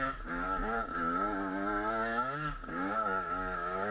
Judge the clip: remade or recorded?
remade